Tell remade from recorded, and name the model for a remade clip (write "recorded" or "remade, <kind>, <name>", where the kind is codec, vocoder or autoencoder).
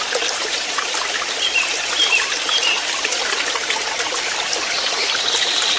recorded